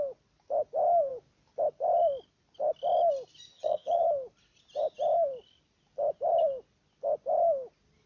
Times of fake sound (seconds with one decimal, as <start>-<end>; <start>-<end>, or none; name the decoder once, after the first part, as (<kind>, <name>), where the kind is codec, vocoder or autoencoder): 3.5-4.0 (vocoder, HiFi-GAN)